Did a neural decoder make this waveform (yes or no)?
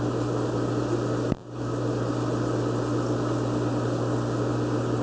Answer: no